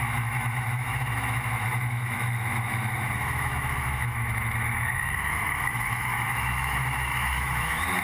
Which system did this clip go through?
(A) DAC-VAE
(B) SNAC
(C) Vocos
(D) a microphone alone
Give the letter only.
A